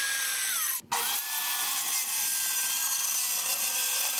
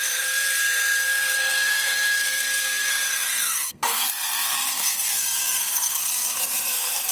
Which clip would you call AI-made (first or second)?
second